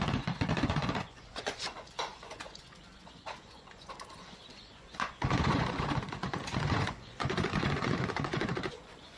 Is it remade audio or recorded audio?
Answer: remade